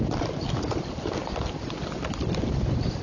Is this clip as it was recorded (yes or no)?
yes